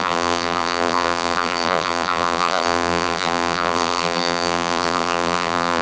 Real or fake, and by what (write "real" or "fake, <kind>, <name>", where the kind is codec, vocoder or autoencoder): fake, vocoder, BigVGAN v2